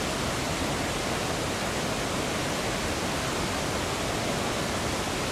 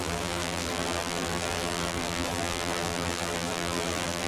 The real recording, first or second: first